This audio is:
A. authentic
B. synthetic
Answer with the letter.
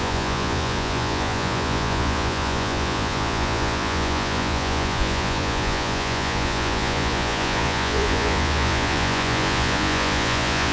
B